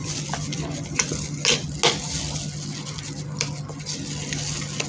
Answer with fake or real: real